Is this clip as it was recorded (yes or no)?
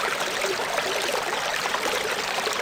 yes